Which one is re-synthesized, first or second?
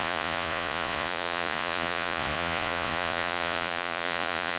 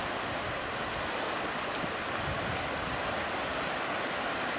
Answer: first